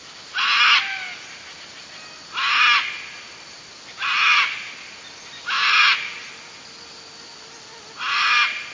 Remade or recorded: recorded